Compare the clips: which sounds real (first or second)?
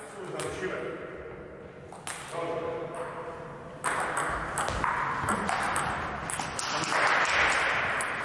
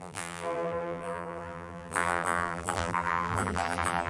first